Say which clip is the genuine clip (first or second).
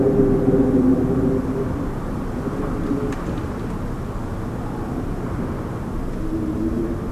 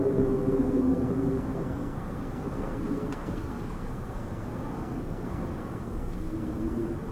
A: first